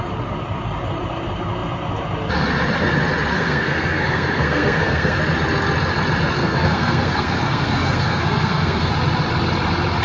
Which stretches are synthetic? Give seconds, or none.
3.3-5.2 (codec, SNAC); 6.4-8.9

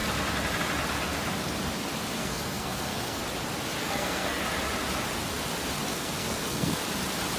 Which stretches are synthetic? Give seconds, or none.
2.2-3.2 (codec, SNAC); 3.8-4.4; 5.9-6.8

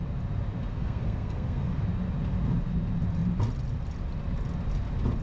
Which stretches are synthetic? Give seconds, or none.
0.7-1.8 (codec, SNAC)

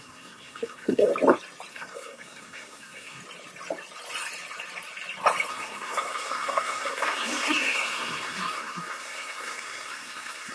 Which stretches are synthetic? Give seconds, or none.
0.0-1.1 (codec, SNAC); 1.7-3.2; 5.5-10.5

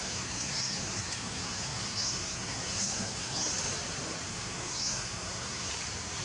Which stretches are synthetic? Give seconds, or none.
0.0-3.5 (codec, SNAC); 4.3-5.7

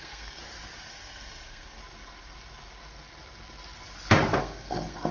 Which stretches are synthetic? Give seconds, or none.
0.0-0.4 (codec, SNAC); 0.9-1.8; 4.4-5.1

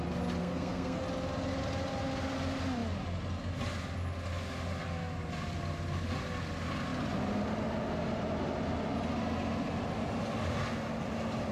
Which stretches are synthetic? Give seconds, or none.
0.4-1.0 (codec, SNAC)

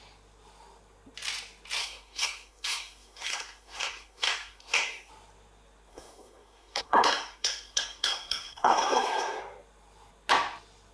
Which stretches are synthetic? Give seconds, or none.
1.8-5.1 (codec, SNAC); 5.9-9.4